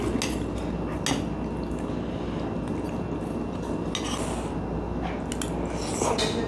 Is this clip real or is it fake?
real